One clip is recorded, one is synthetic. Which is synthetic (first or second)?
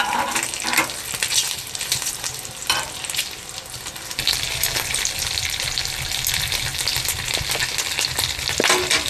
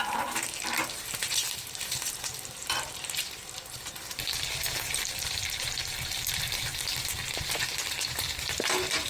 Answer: second